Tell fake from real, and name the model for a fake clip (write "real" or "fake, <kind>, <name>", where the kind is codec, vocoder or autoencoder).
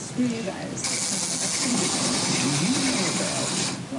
real